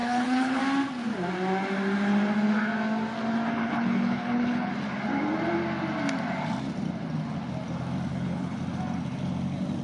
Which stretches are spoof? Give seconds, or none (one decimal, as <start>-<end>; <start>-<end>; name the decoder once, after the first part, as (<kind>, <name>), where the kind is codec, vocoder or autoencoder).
0.0-0.6 (codec, HILCodec); 3.6-4.7; 8.1-8.6